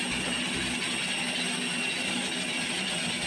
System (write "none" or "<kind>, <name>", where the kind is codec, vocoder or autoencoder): none